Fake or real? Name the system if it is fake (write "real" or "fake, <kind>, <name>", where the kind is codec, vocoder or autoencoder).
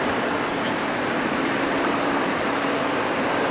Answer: real